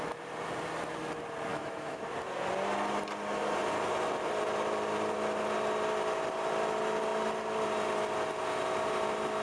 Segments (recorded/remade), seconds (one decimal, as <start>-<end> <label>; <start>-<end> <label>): 0.0-1.5 recorded; 1.5-2.0 remade; 2.0-9.4 recorded